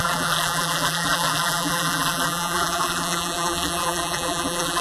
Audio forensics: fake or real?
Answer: fake